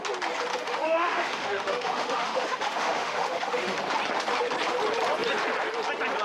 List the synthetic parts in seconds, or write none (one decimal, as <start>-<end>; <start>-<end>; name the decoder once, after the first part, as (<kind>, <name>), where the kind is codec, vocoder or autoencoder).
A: 0.5-3.8 (autoencoder, DAC-VAE)